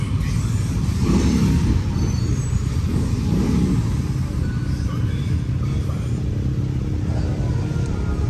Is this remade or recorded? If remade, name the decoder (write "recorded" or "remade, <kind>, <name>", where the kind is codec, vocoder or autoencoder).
recorded